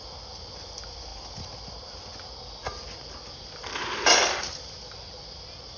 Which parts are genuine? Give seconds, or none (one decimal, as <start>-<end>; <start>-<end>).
0.0-5.8